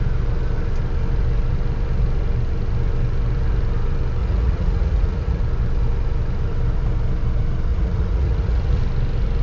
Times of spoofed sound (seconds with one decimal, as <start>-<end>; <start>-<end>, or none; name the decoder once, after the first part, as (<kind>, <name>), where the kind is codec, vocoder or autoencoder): 4.2-5.4 (vocoder, Vocos); 7.7-8.8